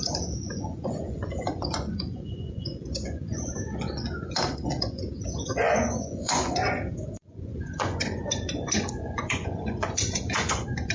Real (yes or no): no